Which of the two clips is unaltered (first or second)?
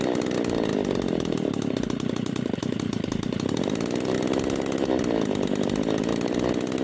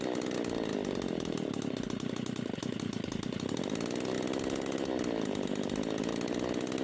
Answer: second